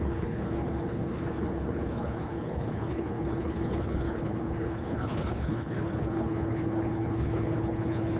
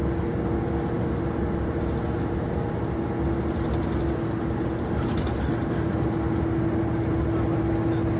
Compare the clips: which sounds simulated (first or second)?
first